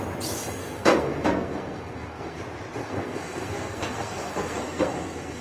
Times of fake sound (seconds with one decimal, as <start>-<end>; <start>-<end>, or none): 0.6-2.4; 2.8-5.4